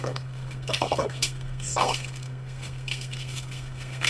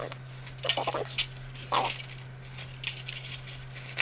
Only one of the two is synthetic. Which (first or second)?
first